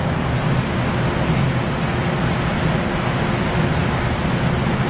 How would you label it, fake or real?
real